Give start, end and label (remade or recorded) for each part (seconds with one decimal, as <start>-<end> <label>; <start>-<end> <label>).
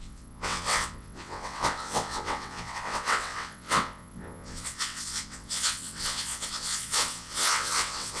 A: 0.0-8.2 remade